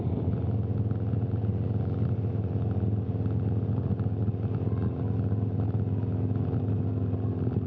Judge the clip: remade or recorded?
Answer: recorded